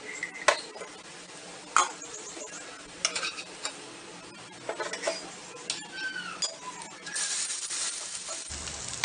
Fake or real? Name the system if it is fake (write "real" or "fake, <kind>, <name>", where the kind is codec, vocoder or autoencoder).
real